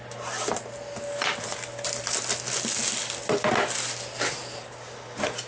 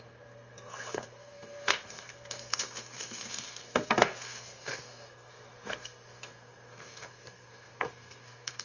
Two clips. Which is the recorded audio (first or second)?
first